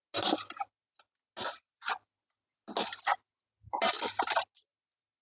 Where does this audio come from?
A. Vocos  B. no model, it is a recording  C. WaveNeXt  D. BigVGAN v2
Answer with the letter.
B